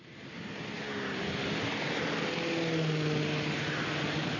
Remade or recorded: recorded